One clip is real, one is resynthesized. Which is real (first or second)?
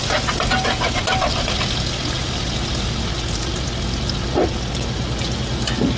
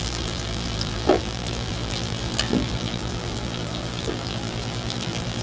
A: first